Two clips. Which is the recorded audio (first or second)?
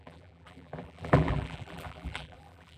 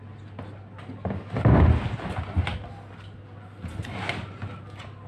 second